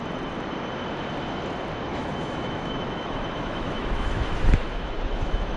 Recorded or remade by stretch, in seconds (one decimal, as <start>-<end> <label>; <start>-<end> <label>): 0.0-1.9 recorded; 1.9-5.6 remade